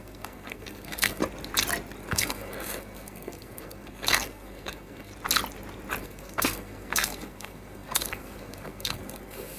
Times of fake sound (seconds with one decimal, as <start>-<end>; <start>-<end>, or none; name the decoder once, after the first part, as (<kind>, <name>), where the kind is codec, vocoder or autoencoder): 0.0-1.2 (codec, SNAC); 2.1-5.1; 6.0-9.6